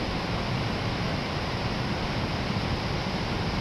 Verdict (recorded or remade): recorded